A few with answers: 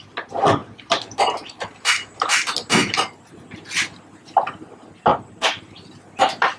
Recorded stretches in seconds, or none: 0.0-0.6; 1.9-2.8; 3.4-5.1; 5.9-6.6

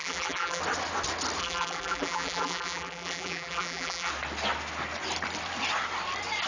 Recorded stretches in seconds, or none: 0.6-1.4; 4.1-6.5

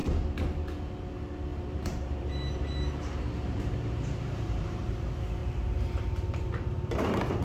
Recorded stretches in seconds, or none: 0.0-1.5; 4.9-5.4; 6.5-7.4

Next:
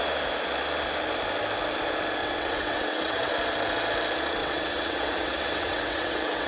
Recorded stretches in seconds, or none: 0.0-2.2; 3.3-4.4